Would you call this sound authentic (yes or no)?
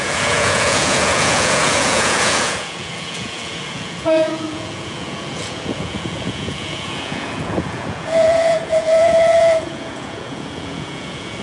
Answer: no